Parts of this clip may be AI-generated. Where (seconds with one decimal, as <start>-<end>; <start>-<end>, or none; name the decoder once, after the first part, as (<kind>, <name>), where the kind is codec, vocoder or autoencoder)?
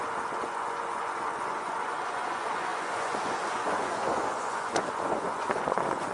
0.0-6.1 (vocoder, Vocos)